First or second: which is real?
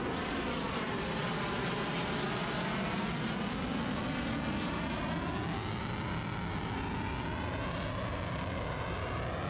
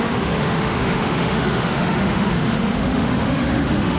first